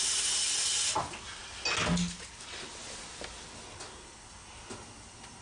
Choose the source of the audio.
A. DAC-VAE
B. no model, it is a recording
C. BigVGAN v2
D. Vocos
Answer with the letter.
B